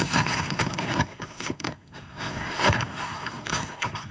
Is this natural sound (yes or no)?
no